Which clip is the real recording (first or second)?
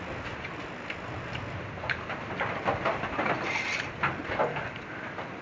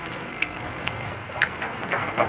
first